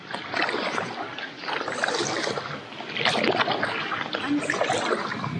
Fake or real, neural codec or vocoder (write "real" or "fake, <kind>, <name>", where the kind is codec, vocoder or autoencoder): real